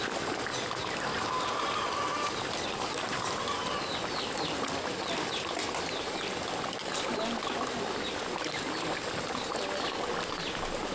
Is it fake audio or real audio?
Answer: real